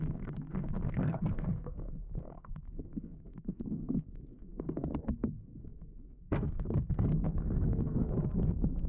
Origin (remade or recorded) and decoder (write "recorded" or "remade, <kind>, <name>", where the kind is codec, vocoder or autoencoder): remade, codec, SNAC